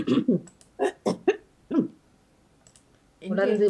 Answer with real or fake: real